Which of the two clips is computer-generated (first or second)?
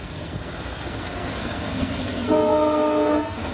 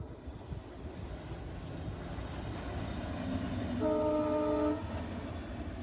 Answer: first